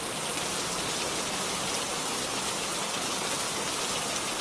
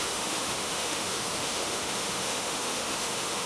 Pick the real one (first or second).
first